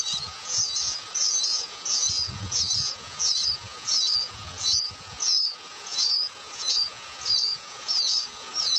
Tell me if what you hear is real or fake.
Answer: fake